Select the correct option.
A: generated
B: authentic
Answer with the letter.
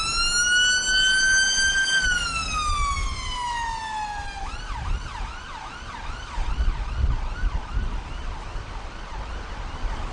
B